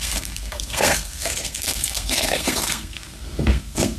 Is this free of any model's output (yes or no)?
no